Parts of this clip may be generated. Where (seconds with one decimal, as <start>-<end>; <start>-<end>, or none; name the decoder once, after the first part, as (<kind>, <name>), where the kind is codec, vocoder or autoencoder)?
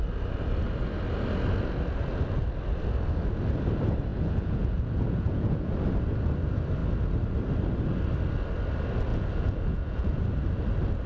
4.1-5.7 (vocoder, Vocos); 9.1-10.2